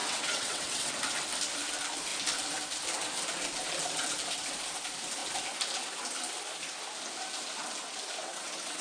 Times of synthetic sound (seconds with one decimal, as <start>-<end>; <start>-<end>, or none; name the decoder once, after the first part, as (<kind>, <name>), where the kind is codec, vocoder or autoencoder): 0.0-0.9 (vocoder, WaveNeXt); 8.2-8.8